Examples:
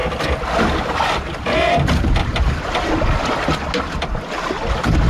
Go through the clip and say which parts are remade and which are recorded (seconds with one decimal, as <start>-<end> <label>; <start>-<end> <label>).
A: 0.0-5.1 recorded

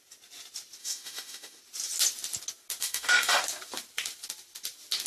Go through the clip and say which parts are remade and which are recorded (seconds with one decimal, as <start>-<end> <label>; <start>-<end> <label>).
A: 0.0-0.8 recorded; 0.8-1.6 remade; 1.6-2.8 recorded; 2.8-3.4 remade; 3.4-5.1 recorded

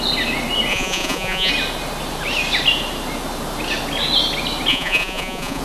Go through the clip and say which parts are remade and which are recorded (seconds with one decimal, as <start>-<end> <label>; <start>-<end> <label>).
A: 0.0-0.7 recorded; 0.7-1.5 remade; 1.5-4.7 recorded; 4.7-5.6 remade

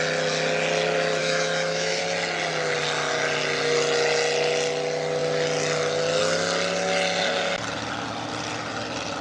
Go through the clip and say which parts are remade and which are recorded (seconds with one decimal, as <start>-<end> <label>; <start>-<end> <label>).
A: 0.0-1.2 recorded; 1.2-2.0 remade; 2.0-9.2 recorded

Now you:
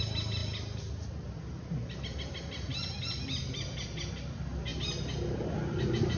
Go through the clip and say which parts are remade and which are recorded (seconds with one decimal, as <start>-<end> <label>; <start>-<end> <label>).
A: 0.0-6.2 recorded